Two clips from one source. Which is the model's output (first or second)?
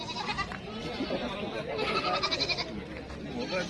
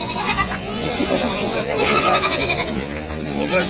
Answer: second